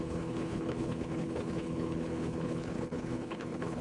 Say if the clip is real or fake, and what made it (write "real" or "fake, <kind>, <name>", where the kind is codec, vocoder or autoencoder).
fake, codec, HILCodec